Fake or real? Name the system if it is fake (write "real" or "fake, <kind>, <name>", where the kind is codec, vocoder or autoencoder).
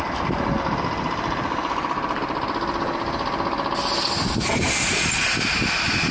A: real